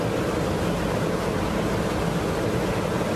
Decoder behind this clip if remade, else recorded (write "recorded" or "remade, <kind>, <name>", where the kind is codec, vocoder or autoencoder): recorded